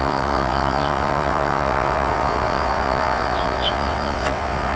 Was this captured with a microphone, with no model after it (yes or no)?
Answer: no